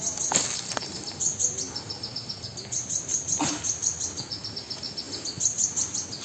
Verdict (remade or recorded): recorded